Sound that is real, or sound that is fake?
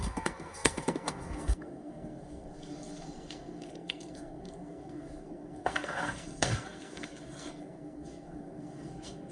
fake